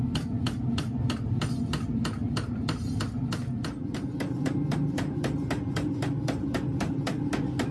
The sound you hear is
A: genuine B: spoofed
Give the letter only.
A